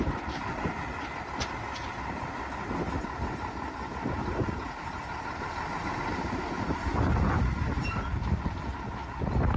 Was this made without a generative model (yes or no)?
yes